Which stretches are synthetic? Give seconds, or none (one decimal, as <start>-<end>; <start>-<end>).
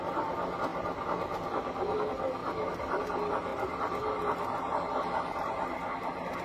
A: none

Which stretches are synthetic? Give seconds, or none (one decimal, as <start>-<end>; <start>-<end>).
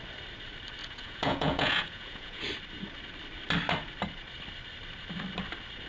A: 0.8-2.4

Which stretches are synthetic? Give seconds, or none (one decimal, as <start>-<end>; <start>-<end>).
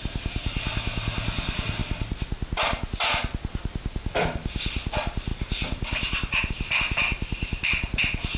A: 0.0-1.8; 4.2-5.3; 6.5-8.4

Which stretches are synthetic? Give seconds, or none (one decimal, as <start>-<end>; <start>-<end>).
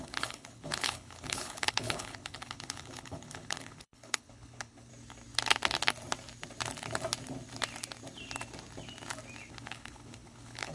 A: 0.0-4.9; 9.5-10.7